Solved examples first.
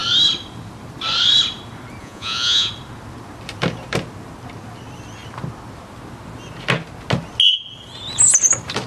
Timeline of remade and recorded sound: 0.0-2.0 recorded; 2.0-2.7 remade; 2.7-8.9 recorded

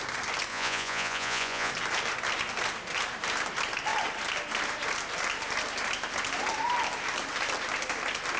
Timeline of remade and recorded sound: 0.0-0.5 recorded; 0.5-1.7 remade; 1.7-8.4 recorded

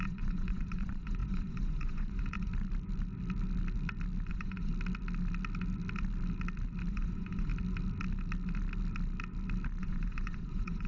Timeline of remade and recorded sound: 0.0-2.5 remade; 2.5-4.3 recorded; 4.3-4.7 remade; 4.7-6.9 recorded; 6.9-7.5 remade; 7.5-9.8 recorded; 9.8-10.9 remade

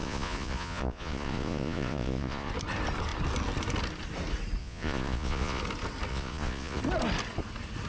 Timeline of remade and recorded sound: 0.0-2.5 remade; 2.5-4.6 recorded; 4.6-5.6 remade; 5.6-6.1 recorded; 6.1-6.8 remade; 6.8-7.9 recorded

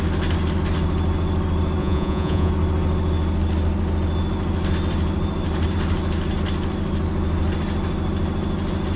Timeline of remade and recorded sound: 0.0-1.8 recorded; 1.8-2.5 remade; 2.5-9.0 recorded